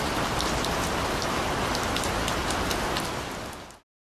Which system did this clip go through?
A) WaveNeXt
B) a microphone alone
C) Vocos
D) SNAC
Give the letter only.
B